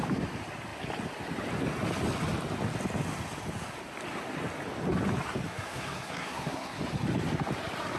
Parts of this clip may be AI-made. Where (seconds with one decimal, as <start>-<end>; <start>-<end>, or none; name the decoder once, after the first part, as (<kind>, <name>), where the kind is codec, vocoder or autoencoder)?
5.5-6.8 (codec, SNAC)

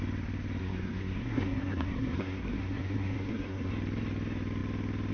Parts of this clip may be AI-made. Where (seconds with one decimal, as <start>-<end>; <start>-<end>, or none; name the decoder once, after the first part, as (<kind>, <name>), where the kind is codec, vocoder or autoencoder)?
0.6-3.7 (codec, SNAC)

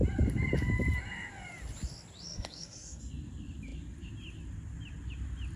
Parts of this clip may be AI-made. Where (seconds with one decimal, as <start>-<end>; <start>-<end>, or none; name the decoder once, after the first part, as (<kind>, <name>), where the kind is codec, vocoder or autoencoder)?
2.3-3.0 (codec, SNAC)

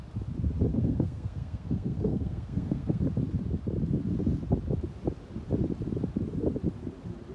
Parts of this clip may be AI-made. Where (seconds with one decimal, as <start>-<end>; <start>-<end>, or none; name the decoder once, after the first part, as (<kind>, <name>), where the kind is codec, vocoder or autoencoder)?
0.7-3.0 (codec, SNAC)

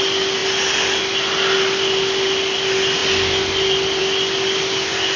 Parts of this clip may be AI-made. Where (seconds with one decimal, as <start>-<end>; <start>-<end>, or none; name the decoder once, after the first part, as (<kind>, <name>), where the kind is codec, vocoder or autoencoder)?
none

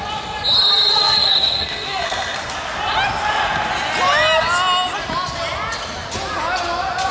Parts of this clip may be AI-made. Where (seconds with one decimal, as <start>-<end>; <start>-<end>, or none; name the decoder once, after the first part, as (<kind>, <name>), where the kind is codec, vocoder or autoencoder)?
0.9-2.5 (codec, SNAC)